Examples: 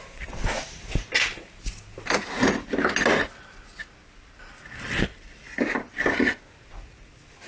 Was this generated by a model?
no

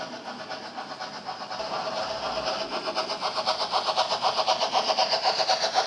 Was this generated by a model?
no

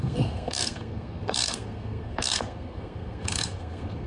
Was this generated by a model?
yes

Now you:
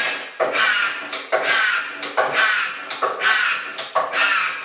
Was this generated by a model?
no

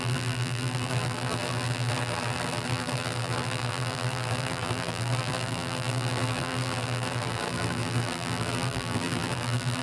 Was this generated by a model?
yes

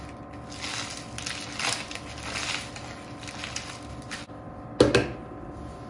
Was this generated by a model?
no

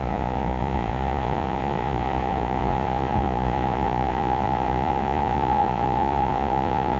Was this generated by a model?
yes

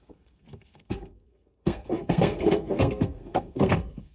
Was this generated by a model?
yes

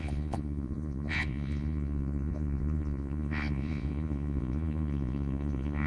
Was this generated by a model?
yes